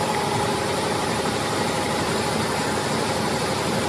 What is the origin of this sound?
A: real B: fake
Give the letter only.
B